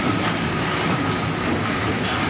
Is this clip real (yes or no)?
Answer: yes